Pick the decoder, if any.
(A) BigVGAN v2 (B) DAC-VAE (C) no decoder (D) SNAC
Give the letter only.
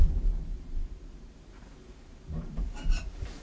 A